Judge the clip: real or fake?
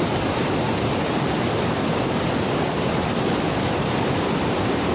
real